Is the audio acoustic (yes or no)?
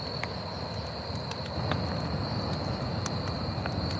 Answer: yes